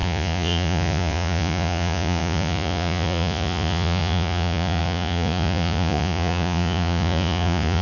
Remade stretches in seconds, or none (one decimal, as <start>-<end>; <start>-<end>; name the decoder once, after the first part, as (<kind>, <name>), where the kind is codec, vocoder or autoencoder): 0.0-7.8 (vocoder, Vocos)